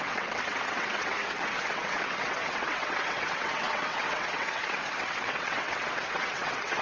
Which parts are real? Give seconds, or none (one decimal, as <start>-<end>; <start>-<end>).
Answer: none